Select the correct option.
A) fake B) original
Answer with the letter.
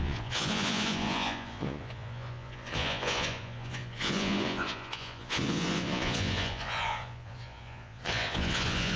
A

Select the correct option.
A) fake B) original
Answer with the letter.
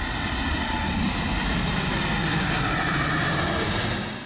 B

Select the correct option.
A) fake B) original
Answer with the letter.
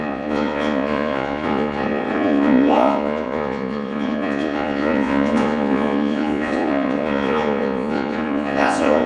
A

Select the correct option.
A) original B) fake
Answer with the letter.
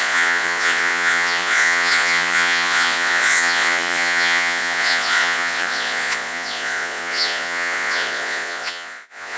B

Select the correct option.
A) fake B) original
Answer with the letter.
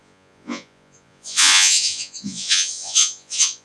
A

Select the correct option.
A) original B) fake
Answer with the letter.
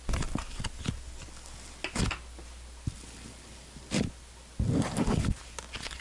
A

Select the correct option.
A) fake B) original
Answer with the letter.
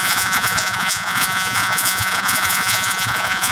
A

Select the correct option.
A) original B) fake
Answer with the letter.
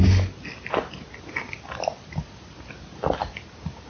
A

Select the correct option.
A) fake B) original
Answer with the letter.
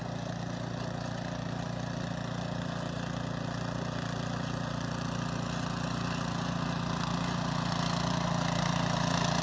B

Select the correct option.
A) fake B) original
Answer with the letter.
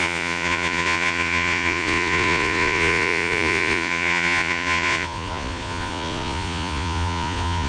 A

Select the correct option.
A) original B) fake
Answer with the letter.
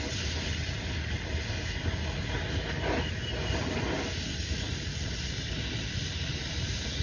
A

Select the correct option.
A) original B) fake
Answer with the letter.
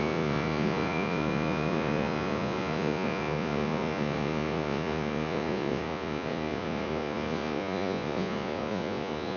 B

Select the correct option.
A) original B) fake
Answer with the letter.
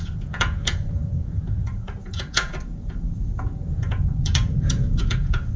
B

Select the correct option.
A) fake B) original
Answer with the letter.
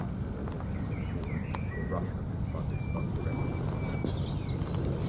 B